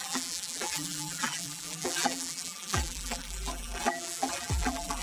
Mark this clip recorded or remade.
remade